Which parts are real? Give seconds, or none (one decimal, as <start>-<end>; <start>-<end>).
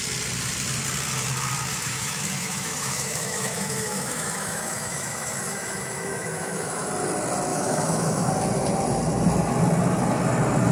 0.0-1.7; 6.9-7.5; 8.3-10.7